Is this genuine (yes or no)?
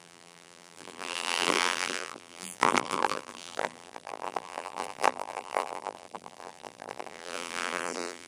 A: no